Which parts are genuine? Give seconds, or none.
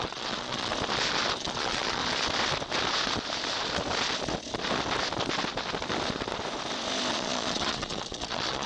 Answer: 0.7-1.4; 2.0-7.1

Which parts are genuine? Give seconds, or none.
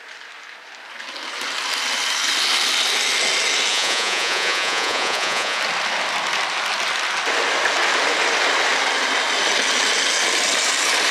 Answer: 0.0-3.7; 5.6-11.1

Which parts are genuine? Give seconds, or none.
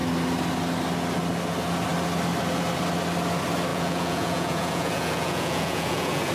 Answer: 0.0-3.7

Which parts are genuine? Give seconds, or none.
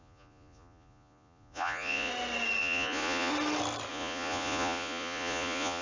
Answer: 2.1-2.6; 3.3-3.9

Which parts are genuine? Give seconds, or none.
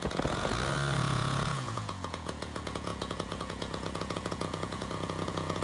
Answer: 0.5-1.0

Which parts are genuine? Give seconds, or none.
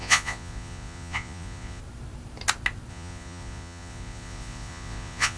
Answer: 1.8-2.9